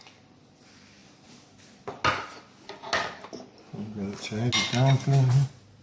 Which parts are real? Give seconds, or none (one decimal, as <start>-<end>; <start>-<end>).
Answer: 0.0-5.8